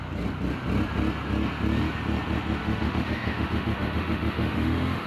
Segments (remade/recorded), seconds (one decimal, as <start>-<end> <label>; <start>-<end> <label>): 0.0-2.6 recorded; 2.6-5.1 remade

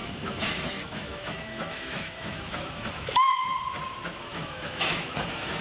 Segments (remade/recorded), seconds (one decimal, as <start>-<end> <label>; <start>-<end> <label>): 0.0-3.5 remade; 3.5-4.2 recorded; 4.2-5.6 remade

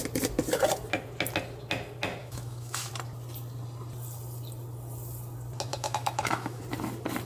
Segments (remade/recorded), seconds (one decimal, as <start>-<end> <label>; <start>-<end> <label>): 0.0-2.2 recorded; 2.2-2.9 remade; 2.9-5.7 recorded; 5.7-6.6 remade; 6.6-7.3 recorded